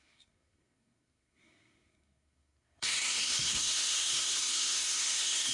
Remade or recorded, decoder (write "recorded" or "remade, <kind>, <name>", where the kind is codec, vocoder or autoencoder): remade, codec, SNAC